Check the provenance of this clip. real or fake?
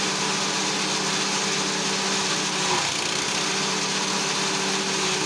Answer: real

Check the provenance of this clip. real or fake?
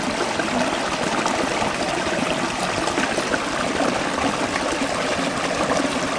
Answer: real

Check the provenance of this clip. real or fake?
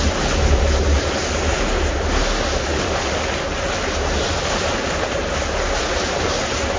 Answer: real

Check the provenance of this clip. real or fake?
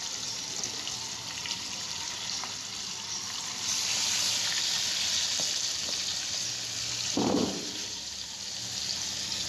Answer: real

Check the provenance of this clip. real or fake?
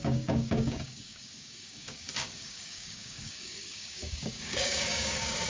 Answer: fake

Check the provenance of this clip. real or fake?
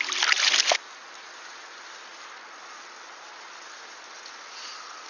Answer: real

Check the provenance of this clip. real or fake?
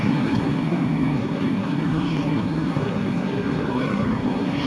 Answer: fake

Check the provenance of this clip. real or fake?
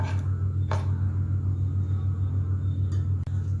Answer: real